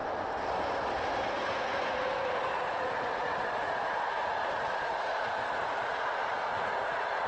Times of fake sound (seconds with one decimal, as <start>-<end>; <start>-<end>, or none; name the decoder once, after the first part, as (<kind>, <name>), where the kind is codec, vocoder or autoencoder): 1.3-7.3 (vocoder, Vocos)